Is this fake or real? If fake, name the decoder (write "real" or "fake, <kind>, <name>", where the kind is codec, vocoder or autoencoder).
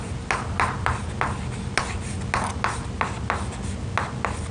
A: real